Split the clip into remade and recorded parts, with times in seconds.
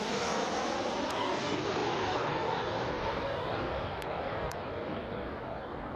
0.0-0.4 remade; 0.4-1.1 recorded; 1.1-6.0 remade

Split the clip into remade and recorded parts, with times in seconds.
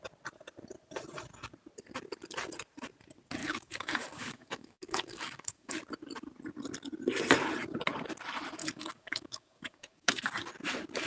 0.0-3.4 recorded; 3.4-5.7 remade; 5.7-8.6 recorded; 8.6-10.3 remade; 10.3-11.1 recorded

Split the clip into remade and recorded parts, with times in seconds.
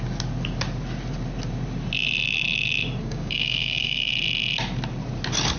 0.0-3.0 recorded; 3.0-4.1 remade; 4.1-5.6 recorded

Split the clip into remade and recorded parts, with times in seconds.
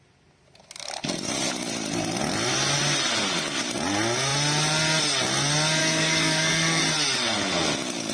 0.0-5.8 recorded; 5.8-6.8 remade; 6.8-8.1 recorded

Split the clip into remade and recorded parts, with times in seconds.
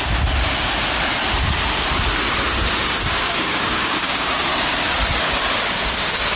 0.0-2.8 recorded; 2.8-4.5 remade; 4.5-5.7 recorded; 5.7-6.4 remade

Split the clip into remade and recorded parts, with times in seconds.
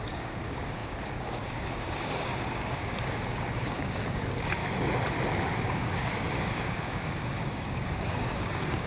0.0-4.6 remade; 4.6-5.6 recorded; 5.6-8.9 remade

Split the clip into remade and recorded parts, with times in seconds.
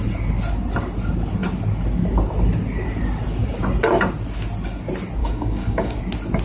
0.0-5.2 recorded; 5.2-6.0 remade; 6.0-6.4 recorded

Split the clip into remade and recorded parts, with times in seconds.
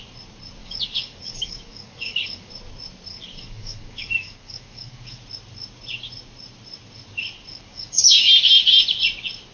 0.0-0.6 recorded; 0.6-2.5 remade; 2.5-3.1 recorded; 3.1-5.2 remade; 5.2-7.5 recorded; 7.5-8.3 remade; 8.3-9.5 recorded